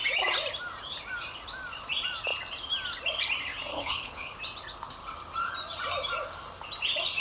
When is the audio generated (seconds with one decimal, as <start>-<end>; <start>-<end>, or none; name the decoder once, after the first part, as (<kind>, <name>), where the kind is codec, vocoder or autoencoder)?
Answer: 3.7-4.4 (codec, HILCodec)